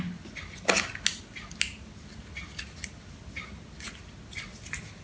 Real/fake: real